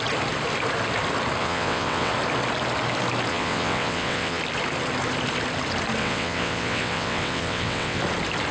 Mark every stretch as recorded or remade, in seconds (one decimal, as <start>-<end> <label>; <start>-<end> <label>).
0.0-1.4 recorded; 1.4-2.1 remade; 2.1-3.3 recorded; 3.3-4.4 remade; 4.4-6.0 recorded; 6.0-8.0 remade; 8.0-8.5 recorded